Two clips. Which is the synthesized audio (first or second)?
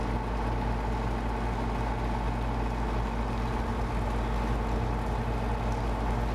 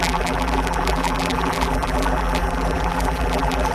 second